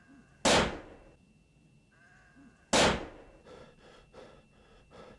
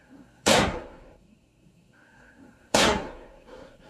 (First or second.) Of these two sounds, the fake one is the second